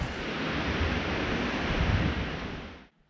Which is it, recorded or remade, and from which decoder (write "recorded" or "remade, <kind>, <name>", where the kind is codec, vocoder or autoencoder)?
recorded